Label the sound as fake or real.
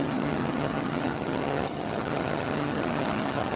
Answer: fake